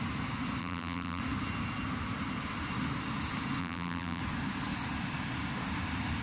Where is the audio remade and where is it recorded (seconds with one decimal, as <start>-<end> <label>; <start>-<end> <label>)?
0.0-0.6 recorded; 0.6-1.2 remade; 1.2-3.6 recorded; 3.6-4.2 remade; 4.2-6.2 recorded